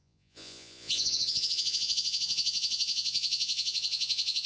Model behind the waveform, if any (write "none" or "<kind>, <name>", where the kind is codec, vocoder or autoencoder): vocoder, Vocos